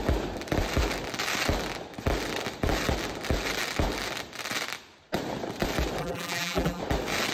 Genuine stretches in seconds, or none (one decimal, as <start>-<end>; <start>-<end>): 0.0-6.0; 6.8-7.3